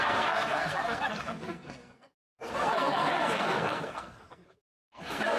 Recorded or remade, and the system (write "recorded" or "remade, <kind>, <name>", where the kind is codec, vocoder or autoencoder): remade, codec, SNAC